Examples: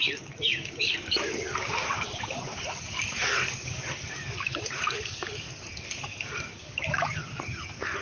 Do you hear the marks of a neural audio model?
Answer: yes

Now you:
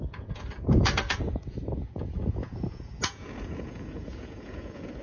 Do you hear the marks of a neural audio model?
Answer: yes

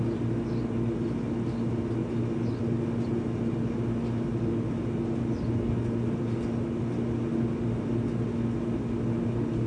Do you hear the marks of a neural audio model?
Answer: no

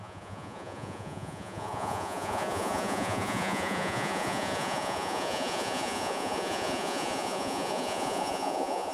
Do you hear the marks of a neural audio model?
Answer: yes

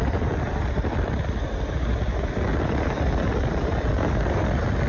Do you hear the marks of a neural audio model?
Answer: no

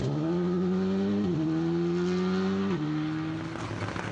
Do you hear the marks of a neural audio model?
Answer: no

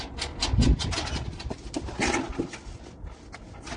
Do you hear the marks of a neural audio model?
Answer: no